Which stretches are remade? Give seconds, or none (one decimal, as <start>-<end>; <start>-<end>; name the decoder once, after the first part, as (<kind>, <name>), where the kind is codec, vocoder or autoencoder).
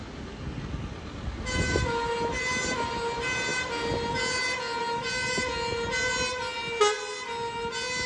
none